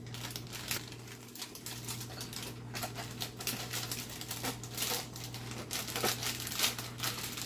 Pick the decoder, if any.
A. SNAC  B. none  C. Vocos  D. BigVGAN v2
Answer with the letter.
B